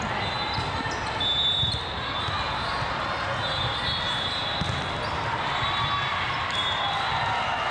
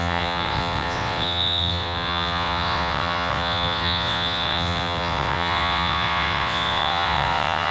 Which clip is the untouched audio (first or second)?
first